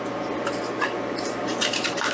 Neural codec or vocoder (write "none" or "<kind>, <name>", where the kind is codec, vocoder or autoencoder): none